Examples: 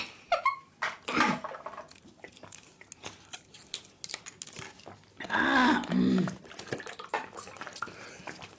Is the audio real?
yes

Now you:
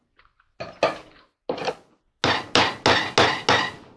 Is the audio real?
yes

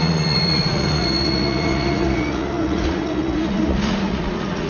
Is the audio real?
no